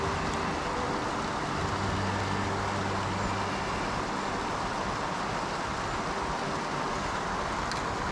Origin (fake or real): real